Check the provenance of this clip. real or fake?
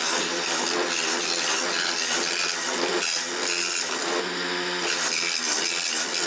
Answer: real